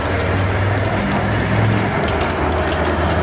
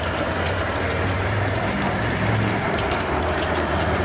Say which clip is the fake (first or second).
second